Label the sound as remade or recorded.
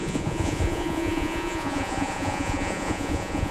remade